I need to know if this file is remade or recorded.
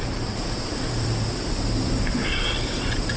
remade